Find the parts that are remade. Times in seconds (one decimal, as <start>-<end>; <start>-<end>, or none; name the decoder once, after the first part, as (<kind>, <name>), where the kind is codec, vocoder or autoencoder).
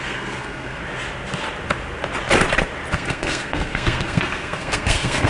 0.0-0.8 (codec, SNAC); 2.9-5.3